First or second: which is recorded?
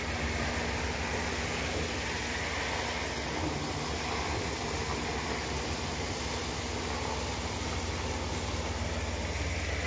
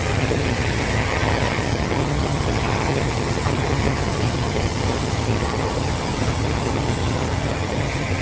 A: first